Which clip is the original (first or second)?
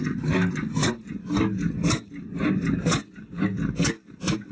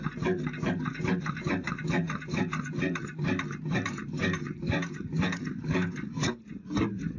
first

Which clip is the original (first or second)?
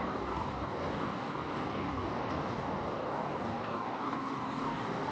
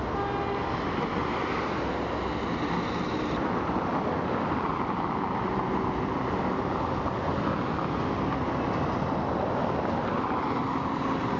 second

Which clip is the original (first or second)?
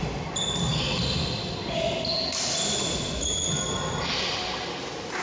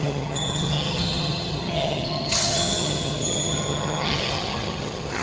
first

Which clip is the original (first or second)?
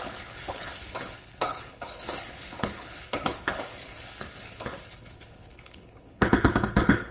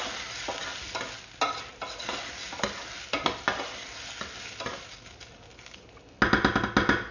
second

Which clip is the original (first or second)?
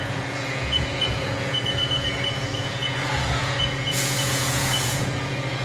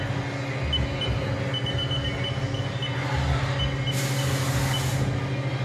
second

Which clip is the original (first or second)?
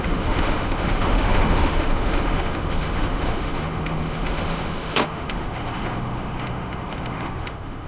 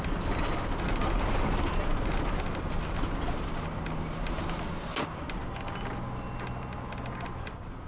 second